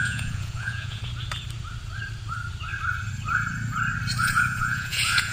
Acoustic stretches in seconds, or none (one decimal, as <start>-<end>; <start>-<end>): 1.0-4.2